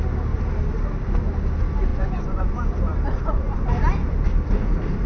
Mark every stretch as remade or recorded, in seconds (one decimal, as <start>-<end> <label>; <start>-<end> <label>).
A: 0.0-1.9 recorded; 1.9-2.4 remade; 2.4-5.1 recorded